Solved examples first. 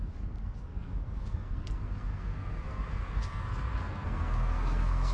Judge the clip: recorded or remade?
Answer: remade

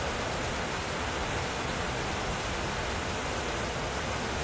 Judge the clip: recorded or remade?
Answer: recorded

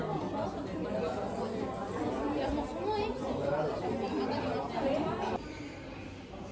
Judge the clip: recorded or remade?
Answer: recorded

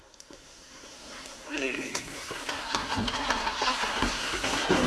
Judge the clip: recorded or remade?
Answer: remade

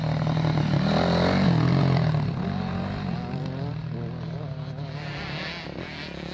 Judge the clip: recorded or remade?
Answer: recorded